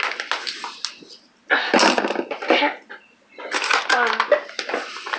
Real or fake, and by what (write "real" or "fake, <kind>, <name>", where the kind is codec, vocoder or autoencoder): real